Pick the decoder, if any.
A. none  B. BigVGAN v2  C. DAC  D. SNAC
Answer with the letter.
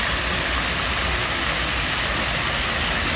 A